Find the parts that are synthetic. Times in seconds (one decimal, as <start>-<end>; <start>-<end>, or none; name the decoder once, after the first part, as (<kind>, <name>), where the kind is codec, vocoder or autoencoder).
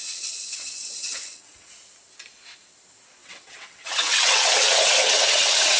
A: 0.0-1.7 (vocoder, WaveNeXt); 3.2-5.8